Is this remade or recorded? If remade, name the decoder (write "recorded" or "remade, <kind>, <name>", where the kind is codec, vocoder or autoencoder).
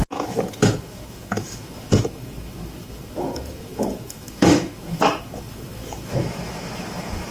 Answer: remade, autoencoder, DAC-VAE